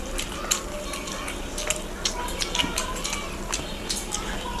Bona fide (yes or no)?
yes